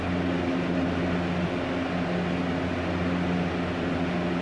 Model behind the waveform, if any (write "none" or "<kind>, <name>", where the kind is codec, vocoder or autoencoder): none